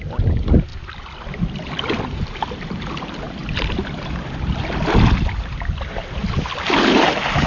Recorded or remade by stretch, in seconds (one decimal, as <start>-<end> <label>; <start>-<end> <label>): 0.0-0.7 recorded; 0.7-1.9 remade; 1.9-3.4 recorded; 3.4-4.8 remade; 4.8-7.5 recorded

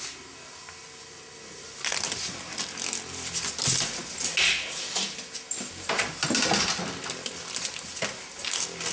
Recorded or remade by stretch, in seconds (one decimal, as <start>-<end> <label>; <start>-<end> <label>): 0.0-8.9 recorded

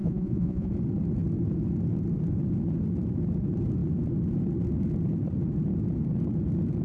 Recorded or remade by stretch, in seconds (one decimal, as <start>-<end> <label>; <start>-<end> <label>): 0.0-0.7 remade; 0.7-6.8 recorded

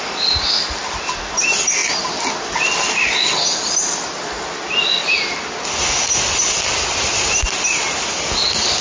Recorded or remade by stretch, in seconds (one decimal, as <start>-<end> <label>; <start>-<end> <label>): 0.0-8.8 recorded

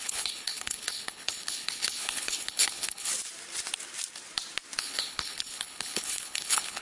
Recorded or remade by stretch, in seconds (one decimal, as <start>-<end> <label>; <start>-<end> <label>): 0.0-3.1 remade; 3.1-4.8 recorded; 4.8-6.8 remade